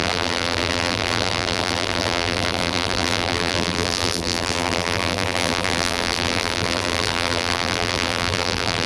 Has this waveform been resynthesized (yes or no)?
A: yes